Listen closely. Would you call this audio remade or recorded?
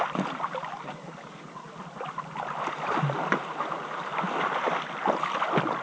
recorded